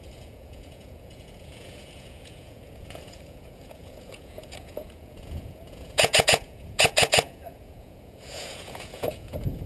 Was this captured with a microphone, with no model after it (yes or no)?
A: no